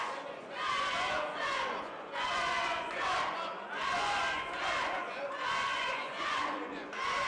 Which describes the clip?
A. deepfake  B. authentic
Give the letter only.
A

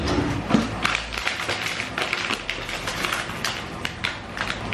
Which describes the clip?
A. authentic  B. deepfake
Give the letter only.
A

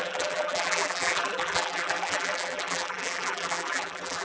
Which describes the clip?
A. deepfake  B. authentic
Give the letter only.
A